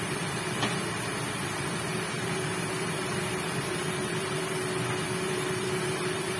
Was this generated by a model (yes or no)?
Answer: yes